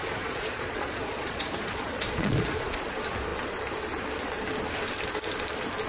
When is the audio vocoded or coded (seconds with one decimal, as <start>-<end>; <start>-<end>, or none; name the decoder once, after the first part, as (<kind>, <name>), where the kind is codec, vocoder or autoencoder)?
0.0-2.9 (vocoder, Vocos)